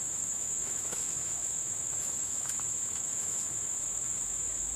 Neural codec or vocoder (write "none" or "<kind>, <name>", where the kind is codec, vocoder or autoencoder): autoencoder, DAC-VAE